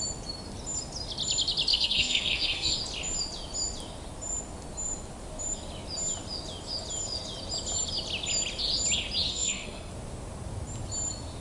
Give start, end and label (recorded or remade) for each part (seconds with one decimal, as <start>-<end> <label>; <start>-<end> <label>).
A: 0.0-1.7 recorded; 1.7-2.7 remade; 2.7-9.3 recorded; 9.3-9.9 remade; 9.9-11.4 recorded

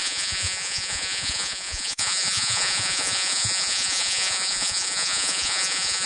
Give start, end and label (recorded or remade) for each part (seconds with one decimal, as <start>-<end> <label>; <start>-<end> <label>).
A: 0.0-6.1 remade